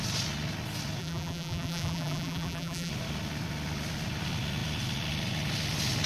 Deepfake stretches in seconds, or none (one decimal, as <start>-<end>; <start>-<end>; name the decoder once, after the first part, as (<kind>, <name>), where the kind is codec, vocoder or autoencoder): 1.0-2.9 (vocoder, BigVGAN v2)